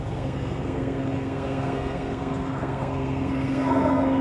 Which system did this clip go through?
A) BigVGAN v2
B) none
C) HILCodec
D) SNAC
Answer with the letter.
D